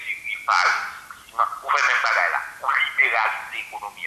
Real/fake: real